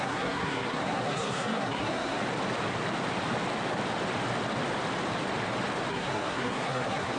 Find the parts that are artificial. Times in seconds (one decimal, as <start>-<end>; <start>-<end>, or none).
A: 0.0-2.2; 5.9-7.2